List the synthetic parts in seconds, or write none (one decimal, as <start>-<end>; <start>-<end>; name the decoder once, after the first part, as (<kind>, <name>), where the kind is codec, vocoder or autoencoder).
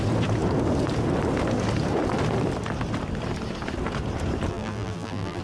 4.5-5.4 (vocoder, BigVGAN v2)